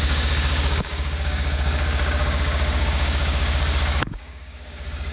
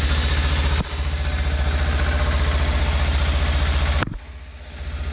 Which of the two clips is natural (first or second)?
second